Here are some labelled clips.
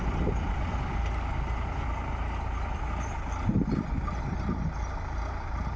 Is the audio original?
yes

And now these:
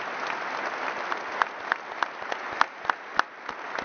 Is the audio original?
yes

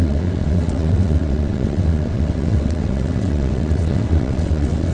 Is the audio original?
no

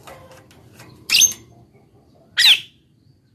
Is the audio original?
yes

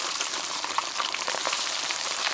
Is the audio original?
no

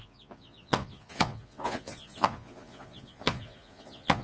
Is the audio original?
no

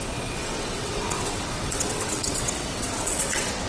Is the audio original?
no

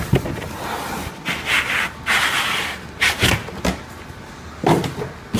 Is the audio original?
yes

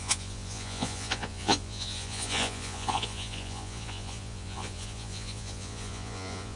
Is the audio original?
no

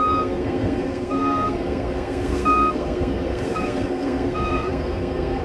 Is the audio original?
no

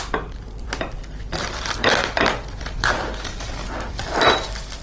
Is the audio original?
no